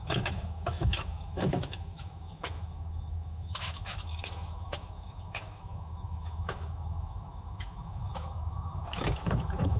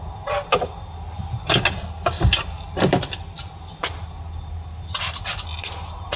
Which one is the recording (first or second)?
second